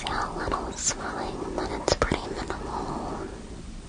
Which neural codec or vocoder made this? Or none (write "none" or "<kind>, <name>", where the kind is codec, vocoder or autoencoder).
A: none